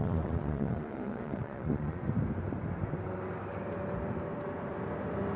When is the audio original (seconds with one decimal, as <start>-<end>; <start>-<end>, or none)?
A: 2.0-5.4